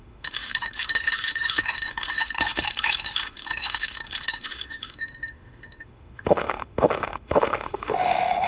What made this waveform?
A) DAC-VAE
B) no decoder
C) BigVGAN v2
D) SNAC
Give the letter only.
A